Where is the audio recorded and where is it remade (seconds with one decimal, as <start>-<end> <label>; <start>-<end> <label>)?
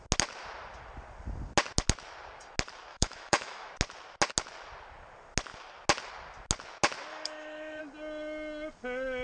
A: 0.0-2.9 recorded; 2.9-3.7 remade; 3.7-7.1 recorded; 7.1-7.8 remade; 7.8-9.2 recorded